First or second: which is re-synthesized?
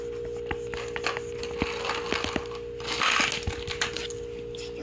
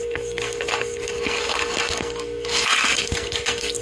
second